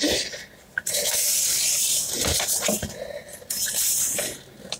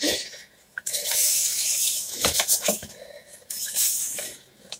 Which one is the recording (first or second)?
first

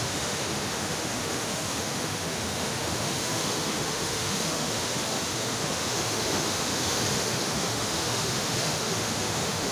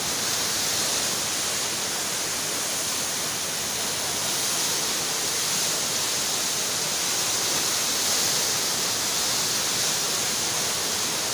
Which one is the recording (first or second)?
second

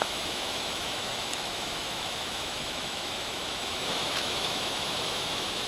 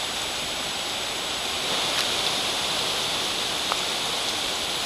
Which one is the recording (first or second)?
second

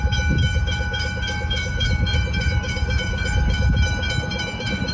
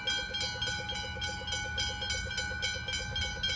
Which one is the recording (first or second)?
second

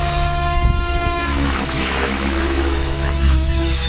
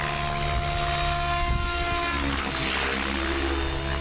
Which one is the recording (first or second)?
second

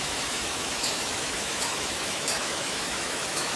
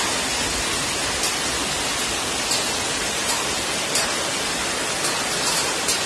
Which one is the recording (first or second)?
second